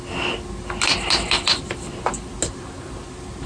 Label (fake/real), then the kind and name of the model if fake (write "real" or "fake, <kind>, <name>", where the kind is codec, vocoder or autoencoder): real